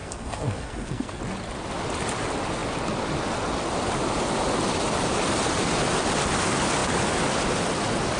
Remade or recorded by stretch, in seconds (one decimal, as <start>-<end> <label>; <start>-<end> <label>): 0.0-1.2 remade; 1.2-8.2 recorded